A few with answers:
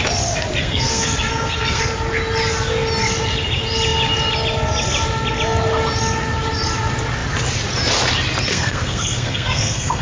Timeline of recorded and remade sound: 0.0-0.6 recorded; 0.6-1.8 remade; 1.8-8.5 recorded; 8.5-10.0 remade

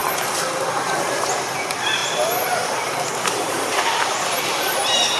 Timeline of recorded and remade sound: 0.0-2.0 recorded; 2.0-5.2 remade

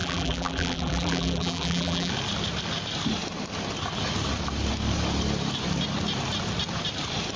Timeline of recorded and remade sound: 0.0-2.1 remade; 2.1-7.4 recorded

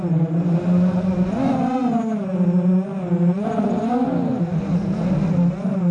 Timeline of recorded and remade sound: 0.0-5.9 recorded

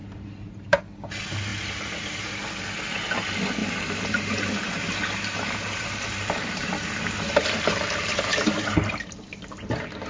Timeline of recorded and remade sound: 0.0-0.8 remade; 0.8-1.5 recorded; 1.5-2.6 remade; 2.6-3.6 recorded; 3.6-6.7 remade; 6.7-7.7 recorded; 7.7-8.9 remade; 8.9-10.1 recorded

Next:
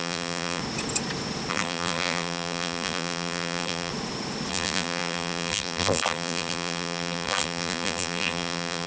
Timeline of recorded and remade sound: 0.0-0.6 remade; 0.6-1.5 recorded; 1.5-3.9 remade; 3.9-4.5 recorded; 4.5-8.9 remade